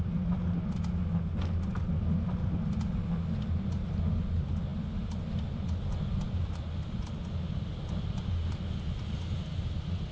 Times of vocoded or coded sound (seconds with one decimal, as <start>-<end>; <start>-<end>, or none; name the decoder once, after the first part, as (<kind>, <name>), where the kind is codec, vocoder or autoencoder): none